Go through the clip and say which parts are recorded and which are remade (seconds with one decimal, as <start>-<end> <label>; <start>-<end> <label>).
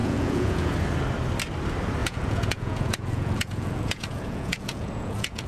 0.0-0.7 remade; 0.7-2.0 recorded; 2.0-5.5 remade